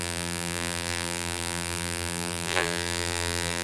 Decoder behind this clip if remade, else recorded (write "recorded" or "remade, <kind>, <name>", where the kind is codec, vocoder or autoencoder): remade, vocoder, BigVGAN v2